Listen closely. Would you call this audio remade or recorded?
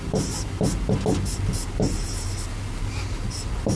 recorded